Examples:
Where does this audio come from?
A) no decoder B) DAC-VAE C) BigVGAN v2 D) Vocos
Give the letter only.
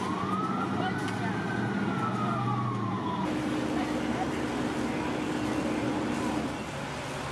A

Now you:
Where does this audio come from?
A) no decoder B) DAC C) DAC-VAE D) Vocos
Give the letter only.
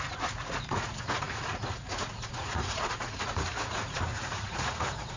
D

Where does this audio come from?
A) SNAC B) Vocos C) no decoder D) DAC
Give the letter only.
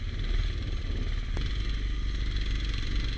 C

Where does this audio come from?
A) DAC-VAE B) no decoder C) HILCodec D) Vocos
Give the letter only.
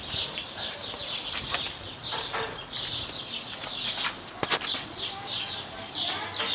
B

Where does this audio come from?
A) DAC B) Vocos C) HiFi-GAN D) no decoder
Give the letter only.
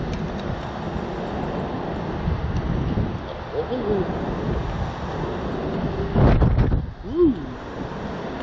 D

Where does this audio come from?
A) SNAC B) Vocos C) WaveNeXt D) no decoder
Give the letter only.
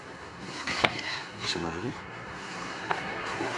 A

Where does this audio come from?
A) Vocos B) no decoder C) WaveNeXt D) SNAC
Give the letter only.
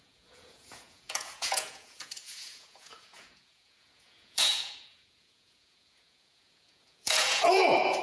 A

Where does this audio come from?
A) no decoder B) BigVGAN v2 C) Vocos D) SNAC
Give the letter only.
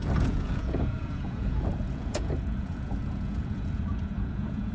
C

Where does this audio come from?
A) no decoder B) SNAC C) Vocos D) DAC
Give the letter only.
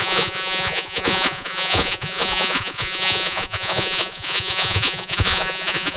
C